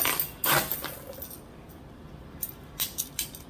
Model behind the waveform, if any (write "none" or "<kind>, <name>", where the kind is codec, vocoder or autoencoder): none